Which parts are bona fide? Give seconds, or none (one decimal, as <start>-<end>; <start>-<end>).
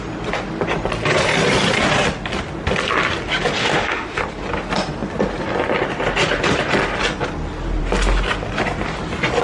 0.0-3.6; 4.2-9.4